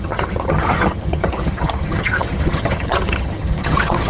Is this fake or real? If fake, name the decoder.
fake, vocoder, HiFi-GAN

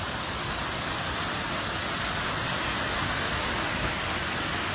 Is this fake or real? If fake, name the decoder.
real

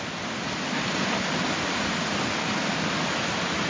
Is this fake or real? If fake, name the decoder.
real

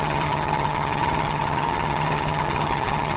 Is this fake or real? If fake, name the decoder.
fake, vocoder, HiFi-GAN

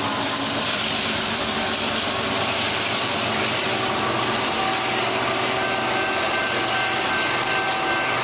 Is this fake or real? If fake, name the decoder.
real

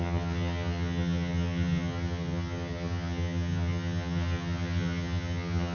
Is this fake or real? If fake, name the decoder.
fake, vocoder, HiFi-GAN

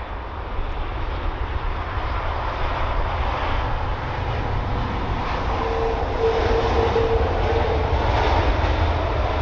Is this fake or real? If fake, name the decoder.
real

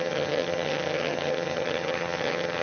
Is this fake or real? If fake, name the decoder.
fake, vocoder, HiFi-GAN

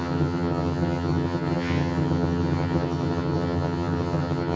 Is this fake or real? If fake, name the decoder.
fake, vocoder, HiFi-GAN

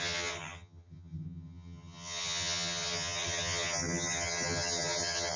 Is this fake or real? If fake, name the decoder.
fake, vocoder, HiFi-GAN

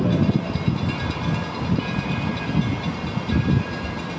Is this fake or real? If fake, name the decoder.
real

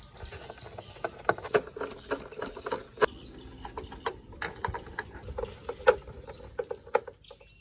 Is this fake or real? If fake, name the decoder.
real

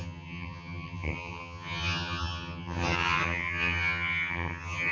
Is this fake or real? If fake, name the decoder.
fake, vocoder, HiFi-GAN